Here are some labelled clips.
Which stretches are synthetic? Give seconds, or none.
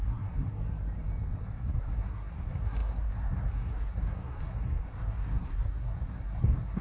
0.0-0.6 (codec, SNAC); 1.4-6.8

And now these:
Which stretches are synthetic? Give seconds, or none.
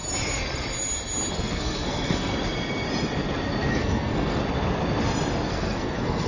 1.3-2.3 (codec, SNAC); 3.7-4.4; 5.5-6.3